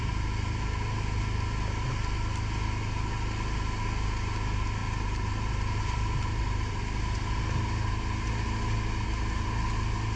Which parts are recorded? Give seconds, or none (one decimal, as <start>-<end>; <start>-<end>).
0.0-4.8; 6.8-10.2